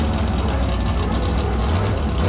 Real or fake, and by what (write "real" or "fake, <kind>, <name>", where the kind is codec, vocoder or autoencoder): real